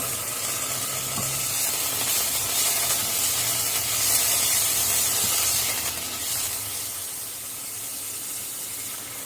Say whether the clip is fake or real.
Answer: real